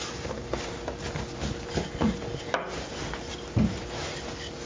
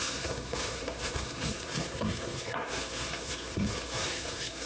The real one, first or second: first